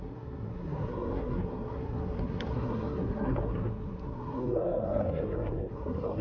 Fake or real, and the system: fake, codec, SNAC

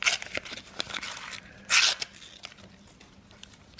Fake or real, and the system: real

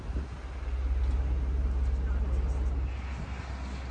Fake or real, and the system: real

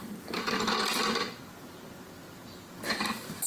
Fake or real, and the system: real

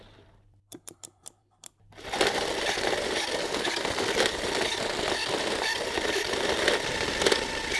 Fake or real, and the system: fake, vocoder, BigVGAN v2